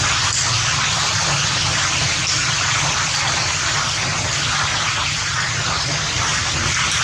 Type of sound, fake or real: real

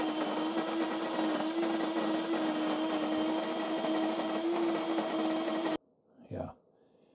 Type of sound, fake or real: real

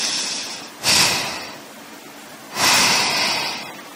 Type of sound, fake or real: real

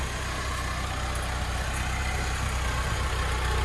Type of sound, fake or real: real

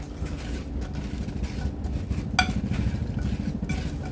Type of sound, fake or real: real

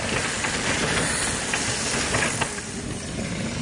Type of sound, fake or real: real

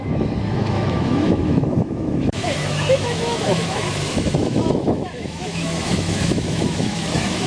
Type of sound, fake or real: fake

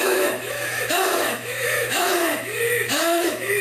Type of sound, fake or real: fake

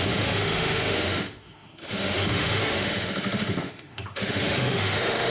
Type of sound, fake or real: fake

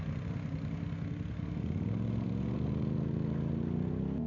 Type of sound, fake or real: real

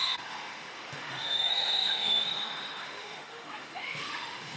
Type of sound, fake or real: fake